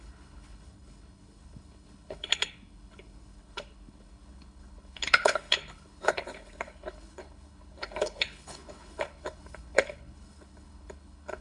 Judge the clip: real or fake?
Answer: fake